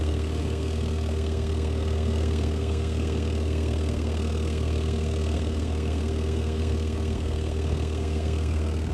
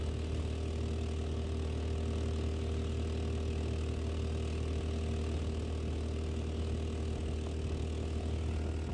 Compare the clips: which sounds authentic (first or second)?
second